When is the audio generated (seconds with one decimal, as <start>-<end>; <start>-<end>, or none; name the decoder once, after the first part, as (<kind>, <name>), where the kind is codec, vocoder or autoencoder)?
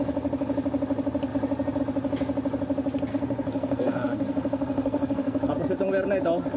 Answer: 3.1-5.5 (codec, SNAC)